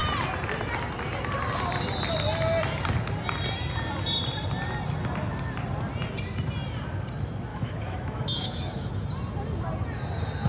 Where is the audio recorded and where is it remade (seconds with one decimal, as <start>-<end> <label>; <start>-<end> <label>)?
0.0-7.5 recorded; 7.5-8.9 remade; 8.9-10.5 recorded